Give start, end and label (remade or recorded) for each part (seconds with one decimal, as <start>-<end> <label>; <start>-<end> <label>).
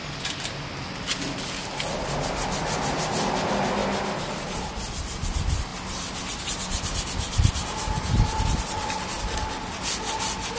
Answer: 0.0-10.6 recorded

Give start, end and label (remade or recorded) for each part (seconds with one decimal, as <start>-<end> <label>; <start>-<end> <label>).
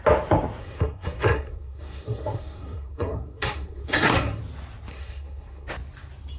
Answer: 0.0-0.6 recorded; 0.6-4.4 remade; 4.4-4.9 recorded; 4.9-5.7 remade; 5.7-6.4 recorded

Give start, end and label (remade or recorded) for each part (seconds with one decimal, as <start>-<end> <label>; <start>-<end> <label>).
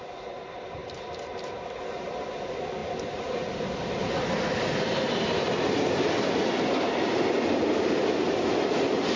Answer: 0.0-9.2 recorded